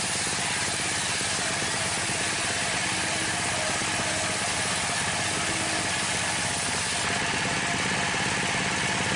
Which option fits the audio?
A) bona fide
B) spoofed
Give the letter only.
A